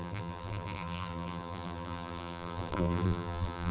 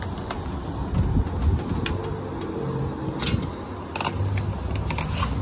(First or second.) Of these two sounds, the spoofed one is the first